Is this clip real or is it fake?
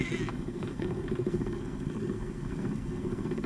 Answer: fake